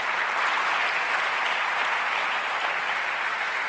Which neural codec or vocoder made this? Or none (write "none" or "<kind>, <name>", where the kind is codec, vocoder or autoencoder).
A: none